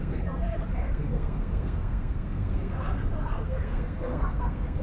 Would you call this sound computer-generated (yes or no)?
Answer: yes